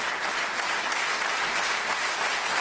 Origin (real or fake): real